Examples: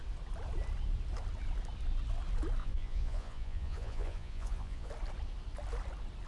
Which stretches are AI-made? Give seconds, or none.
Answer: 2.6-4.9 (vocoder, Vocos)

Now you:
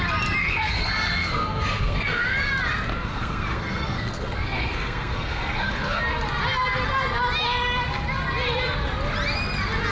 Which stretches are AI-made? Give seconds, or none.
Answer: 0.4-2.5 (codec, SNAC); 3.1-6.0